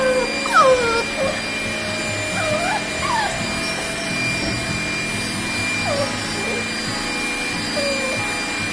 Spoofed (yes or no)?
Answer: no